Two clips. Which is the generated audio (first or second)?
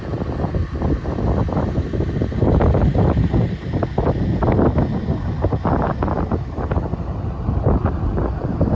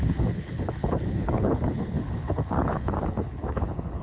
second